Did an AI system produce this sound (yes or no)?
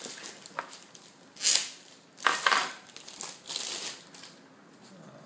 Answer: no